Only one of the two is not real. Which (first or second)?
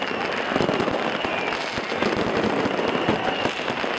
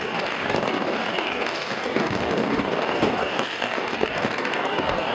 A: second